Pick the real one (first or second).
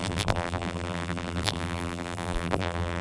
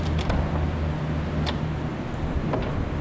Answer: second